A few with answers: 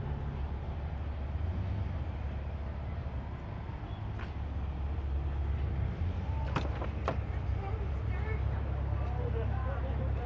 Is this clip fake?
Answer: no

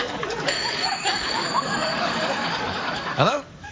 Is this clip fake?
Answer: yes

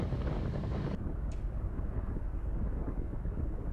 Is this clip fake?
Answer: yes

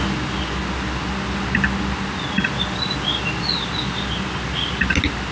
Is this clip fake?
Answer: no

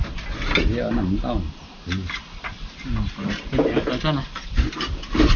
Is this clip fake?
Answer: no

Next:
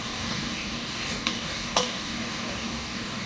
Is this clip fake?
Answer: yes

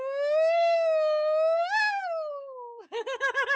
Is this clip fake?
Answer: yes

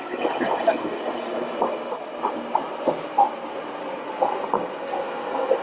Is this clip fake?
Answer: no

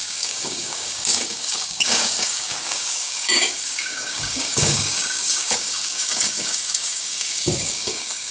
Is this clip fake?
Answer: yes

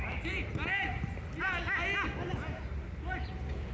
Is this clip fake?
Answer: no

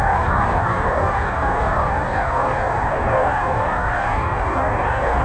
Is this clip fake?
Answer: yes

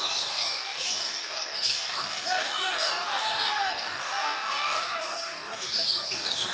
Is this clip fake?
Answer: yes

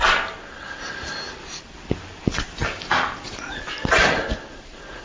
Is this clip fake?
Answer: no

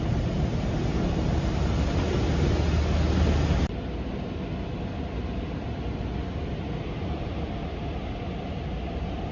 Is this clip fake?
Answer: no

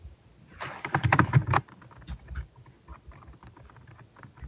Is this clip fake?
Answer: no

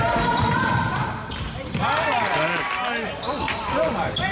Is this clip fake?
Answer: no